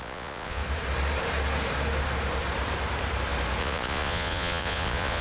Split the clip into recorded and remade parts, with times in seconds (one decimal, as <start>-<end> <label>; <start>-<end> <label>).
0.0-0.6 remade; 0.6-3.6 recorded; 3.6-5.2 remade

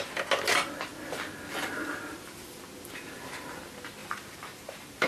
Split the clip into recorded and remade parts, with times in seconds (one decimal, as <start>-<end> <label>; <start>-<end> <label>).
0.0-4.0 recorded; 4.0-5.1 remade

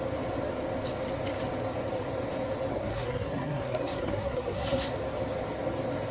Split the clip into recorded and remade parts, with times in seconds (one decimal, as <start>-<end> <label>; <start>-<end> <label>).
0.0-2.7 recorded; 2.7-4.9 remade; 4.9-6.1 recorded

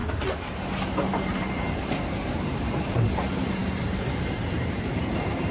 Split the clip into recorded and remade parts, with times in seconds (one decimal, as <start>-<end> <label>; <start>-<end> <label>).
0.0-2.8 recorded; 2.8-5.5 remade

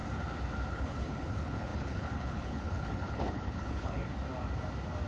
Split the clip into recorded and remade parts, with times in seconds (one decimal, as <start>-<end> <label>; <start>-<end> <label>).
0.0-0.7 recorded; 0.7-4.0 remade; 4.0-5.1 recorded

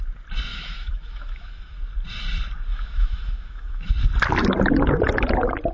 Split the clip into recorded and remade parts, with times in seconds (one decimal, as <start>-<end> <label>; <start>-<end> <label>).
0.0-0.5 recorded; 0.5-1.8 remade; 1.8-2.7 recorded; 2.7-3.9 remade; 3.9-5.7 recorded

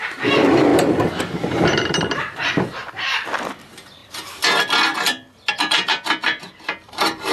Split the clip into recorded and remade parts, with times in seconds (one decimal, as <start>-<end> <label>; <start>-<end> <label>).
0.0-2.8 remade; 2.8-3.6 recorded; 3.6-4.0 remade; 4.0-5.5 recorded; 5.5-7.3 remade